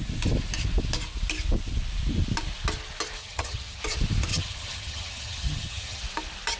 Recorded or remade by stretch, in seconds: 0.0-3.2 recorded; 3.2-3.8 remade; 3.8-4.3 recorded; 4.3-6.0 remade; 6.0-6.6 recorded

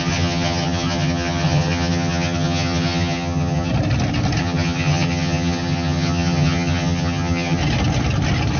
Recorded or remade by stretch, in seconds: 0.0-3.7 remade; 3.7-4.4 recorded; 4.4-7.6 remade; 7.6-8.6 recorded